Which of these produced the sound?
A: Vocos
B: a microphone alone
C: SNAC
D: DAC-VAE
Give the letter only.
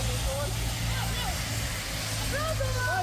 B